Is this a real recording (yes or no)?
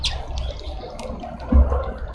yes